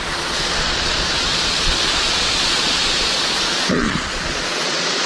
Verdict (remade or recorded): remade